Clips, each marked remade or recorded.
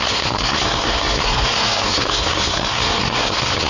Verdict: remade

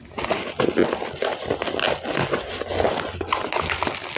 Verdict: recorded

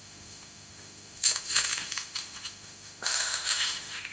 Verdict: remade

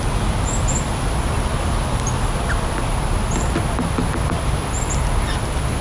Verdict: recorded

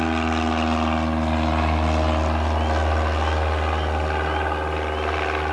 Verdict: recorded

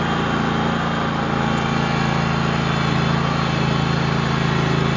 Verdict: recorded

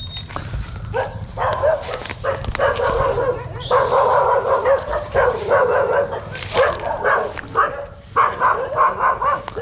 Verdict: recorded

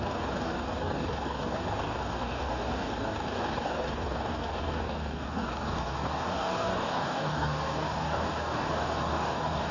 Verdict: remade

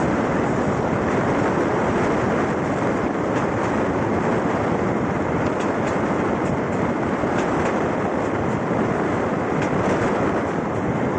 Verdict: recorded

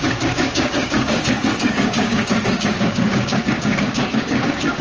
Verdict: remade